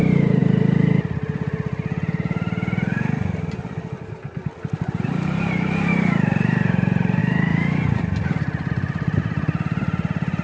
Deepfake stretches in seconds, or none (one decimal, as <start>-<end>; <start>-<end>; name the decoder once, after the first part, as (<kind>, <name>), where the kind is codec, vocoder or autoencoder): 0.0-0.4 (vocoder, BigVGAN v2); 5.1-7.2; 8.7-10.4